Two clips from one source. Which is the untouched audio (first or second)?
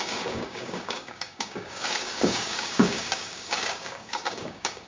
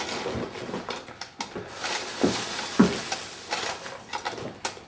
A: second